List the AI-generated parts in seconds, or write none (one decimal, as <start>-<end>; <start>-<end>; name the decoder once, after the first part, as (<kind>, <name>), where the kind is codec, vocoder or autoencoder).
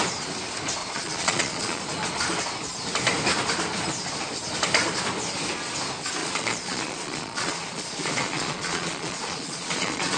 0.8-1.8 (vocoder, Vocos); 6.2-10.2